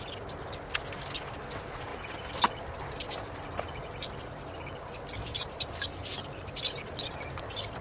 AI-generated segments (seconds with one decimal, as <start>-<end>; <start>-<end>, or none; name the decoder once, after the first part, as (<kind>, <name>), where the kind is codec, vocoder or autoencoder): none